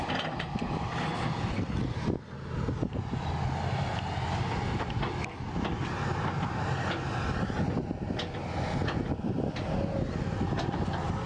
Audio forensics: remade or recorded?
recorded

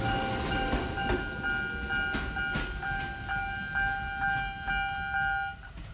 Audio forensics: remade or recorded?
recorded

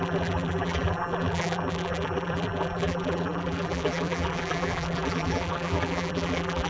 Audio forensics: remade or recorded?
remade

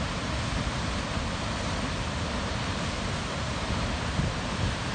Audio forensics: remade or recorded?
remade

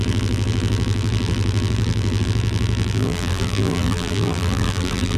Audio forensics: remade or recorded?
remade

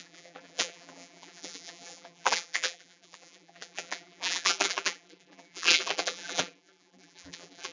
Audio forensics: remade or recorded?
remade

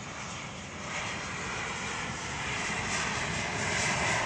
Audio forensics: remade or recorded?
remade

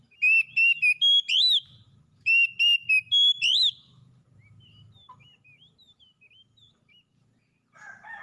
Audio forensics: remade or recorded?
recorded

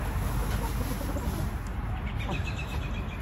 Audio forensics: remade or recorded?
recorded